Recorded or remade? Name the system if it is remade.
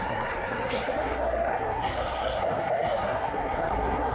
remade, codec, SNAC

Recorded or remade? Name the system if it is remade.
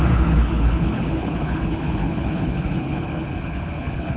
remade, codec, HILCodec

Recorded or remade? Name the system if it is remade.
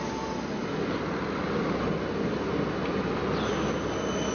recorded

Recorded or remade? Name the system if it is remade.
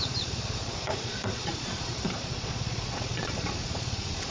remade, vocoder, Vocos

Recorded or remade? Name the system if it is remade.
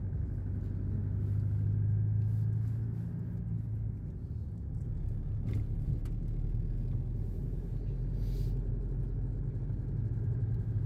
recorded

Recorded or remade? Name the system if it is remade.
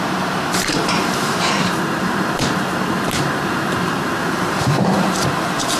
remade, vocoder, BigVGAN v2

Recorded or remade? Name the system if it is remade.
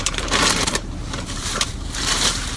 remade, vocoder, BigVGAN v2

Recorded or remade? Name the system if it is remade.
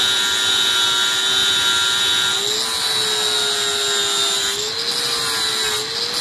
recorded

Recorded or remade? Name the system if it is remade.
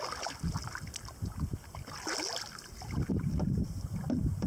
recorded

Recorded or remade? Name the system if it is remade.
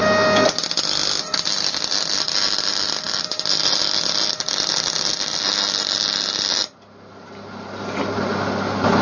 recorded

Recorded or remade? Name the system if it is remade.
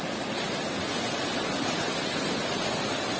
recorded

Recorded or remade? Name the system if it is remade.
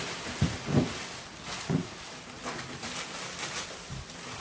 recorded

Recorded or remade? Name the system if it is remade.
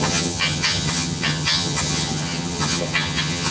remade, vocoder, HiFi-GAN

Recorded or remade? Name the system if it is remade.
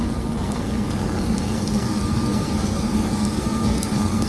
remade, codec, SNAC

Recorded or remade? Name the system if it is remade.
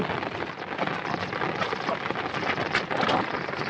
recorded